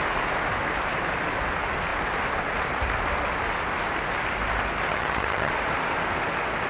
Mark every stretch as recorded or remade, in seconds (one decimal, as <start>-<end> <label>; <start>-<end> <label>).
0.0-4.9 recorded; 4.9-5.5 remade; 5.5-6.7 recorded